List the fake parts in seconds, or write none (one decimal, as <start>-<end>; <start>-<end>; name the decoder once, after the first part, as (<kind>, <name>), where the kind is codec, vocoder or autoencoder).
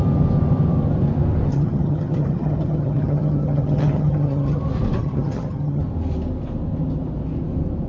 1.5-4.6 (vocoder, HiFi-GAN); 5.0-5.8